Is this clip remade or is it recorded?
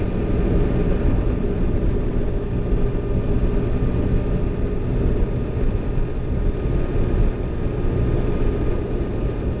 recorded